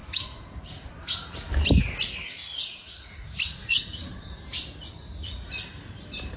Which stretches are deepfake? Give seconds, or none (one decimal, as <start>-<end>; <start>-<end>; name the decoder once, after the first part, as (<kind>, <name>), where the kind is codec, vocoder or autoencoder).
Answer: 0.0-0.9 (vocoder, Vocos); 2.4-4.3; 4.9-5.5